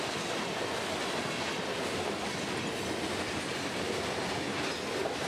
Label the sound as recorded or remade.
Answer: recorded